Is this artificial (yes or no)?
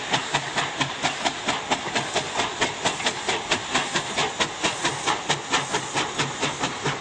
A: no